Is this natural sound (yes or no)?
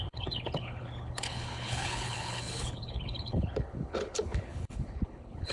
no